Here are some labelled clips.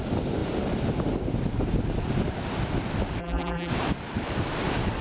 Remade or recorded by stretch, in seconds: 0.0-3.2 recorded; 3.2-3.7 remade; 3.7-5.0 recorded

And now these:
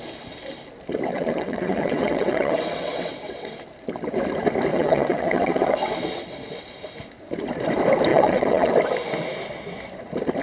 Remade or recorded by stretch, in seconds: 0.0-1.1 recorded; 1.1-3.5 remade; 3.5-4.7 recorded; 4.7-5.9 remade; 5.9-8.1 recorded; 8.1-8.7 remade; 8.7-10.4 recorded

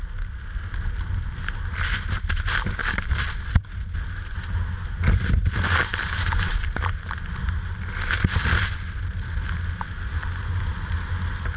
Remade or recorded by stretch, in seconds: 0.0-2.8 recorded; 2.8-3.7 remade; 3.7-11.6 recorded

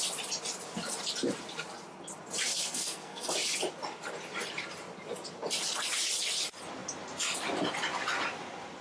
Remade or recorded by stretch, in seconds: 0.0-2.5 recorded; 2.5-3.3 remade; 3.3-8.8 recorded

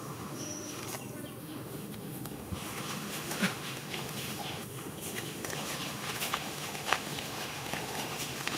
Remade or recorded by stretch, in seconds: 0.0-0.8 remade; 0.8-1.4 recorded; 1.4-8.6 remade

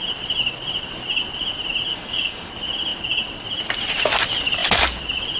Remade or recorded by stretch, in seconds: 0.0-1.9 recorded; 1.9-2.5 remade; 2.5-5.4 recorded

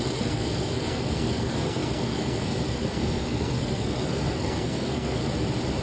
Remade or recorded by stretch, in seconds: 0.0-5.2 remade; 5.2-5.8 recorded